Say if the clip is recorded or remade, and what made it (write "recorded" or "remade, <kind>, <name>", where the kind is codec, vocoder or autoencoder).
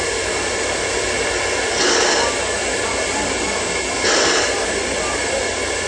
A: recorded